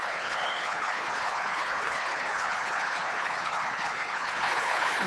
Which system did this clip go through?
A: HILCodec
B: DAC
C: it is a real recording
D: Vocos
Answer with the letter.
A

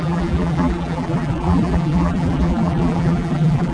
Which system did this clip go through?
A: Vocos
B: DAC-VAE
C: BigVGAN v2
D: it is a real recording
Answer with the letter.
C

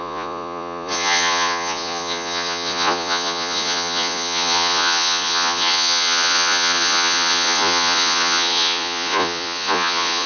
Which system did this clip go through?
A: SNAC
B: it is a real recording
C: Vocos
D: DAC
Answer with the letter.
C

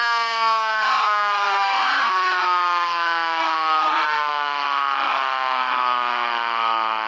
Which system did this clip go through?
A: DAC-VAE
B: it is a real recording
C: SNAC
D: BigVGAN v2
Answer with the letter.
A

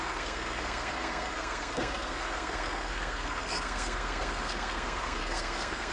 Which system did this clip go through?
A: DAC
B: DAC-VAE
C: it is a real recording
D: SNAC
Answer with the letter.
D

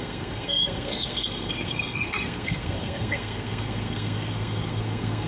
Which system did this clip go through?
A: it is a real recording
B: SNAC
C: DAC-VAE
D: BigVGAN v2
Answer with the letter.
B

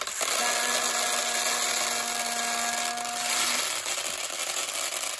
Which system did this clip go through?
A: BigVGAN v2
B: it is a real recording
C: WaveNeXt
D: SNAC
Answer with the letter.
B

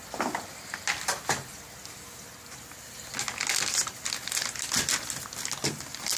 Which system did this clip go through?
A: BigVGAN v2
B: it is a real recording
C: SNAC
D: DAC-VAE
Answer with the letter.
B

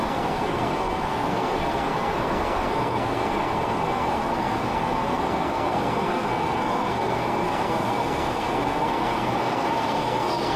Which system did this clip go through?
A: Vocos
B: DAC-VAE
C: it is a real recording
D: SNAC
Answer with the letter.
D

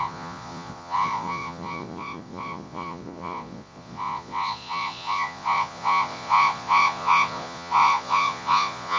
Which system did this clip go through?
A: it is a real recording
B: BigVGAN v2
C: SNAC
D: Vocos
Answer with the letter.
D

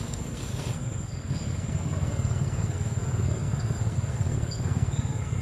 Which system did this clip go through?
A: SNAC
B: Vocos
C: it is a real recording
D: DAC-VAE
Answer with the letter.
A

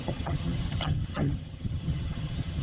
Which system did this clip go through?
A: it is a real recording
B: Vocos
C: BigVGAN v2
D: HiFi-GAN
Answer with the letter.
D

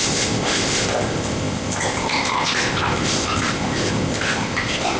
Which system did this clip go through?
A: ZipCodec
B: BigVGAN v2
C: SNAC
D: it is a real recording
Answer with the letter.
A